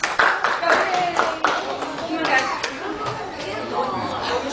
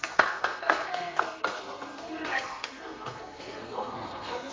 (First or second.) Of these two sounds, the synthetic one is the second